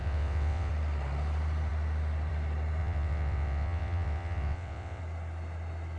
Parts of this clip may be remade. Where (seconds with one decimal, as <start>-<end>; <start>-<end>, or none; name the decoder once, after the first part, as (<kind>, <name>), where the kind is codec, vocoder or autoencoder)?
0.0-0.7 (vocoder, WaveNeXt); 2.8-5.0